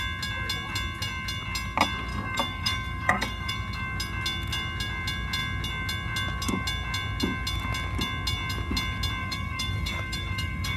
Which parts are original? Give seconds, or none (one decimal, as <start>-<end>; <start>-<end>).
0.0-2.1; 3.5-9.2